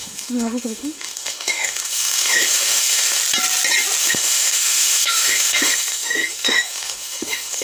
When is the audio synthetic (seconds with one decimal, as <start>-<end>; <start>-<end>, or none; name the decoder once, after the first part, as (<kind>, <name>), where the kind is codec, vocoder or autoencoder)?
0.0-3.2 (autoencoder, DAC-VAE); 4.0-7.6